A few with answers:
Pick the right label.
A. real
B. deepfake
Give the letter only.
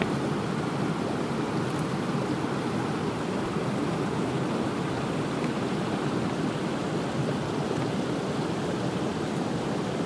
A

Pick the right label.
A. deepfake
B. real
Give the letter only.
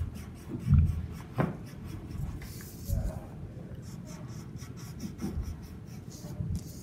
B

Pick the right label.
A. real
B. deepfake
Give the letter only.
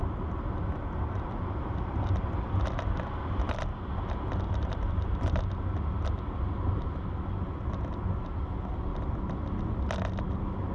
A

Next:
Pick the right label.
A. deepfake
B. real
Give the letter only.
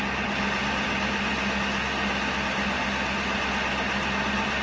B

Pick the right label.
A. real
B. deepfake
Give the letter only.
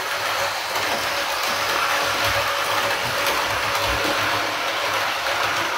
A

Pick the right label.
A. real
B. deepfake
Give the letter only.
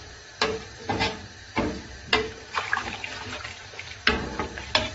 B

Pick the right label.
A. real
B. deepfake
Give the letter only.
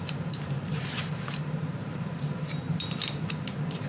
B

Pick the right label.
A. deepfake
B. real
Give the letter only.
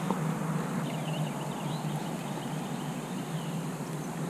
B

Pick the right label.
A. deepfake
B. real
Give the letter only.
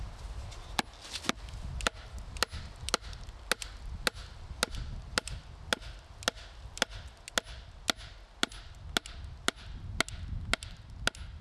B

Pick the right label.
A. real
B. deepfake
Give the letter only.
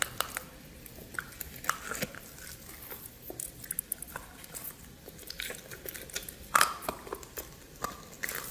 A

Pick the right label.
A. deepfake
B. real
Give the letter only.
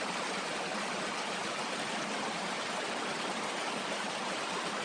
B